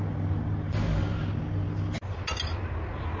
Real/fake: real